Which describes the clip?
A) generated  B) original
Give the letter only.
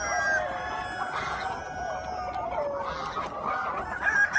B